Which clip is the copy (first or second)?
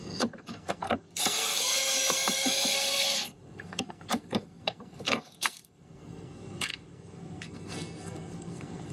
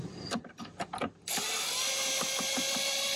first